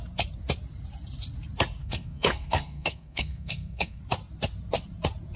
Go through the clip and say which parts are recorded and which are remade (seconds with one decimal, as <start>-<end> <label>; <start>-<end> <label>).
0.0-1.8 recorded; 1.8-4.0 remade; 4.0-5.4 recorded